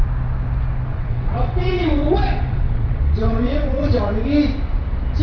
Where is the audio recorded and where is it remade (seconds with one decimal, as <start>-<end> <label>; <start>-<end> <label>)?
0.0-0.9 recorded; 0.9-4.0 remade; 4.0-5.2 recorded